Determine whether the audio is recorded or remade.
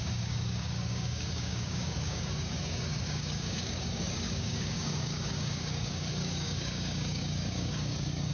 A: remade